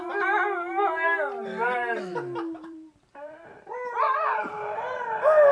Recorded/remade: remade